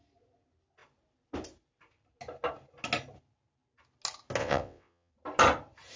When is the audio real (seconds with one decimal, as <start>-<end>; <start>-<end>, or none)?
0.0-4.4; 5.1-6.0